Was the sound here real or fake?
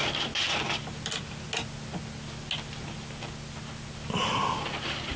real